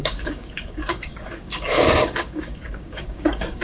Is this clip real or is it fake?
fake